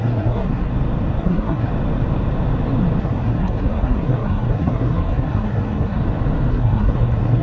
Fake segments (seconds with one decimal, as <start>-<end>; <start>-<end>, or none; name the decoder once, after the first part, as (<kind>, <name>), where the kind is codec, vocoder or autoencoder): 0.0-0.7 (codec, SNAC); 1.2-1.7; 3.0-6.0; 6.5-7.4